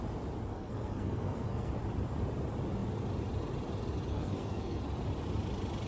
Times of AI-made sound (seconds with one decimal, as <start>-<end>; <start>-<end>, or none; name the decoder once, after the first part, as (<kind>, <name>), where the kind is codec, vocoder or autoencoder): 0.5-1.7 (codec, SNAC); 4.1-4.8